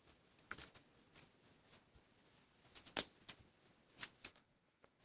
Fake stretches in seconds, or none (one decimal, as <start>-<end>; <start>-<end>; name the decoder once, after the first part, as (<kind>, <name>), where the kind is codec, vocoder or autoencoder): 4.3-5.0 (codec, SNAC)